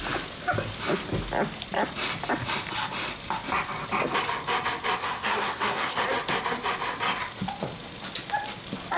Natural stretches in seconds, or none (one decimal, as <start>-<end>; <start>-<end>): 0.0-5.0; 6.0-9.0